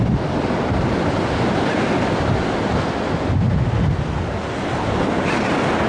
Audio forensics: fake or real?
real